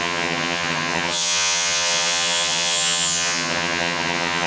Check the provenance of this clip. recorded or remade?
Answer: remade